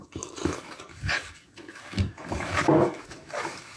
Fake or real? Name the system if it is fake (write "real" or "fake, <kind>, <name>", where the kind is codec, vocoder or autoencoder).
fake, codec, DAC